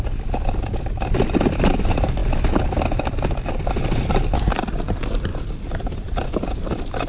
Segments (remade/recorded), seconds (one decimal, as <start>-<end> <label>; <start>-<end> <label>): 0.0-7.1 recorded